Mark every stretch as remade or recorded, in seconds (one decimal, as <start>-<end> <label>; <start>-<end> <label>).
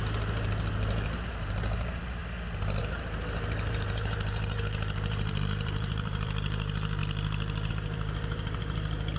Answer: 0.0-2.2 remade; 2.2-2.8 recorded; 2.8-7.0 remade; 7.0-7.7 recorded; 7.7-9.2 remade